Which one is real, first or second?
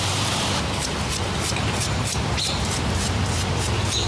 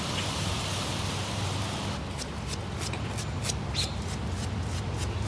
second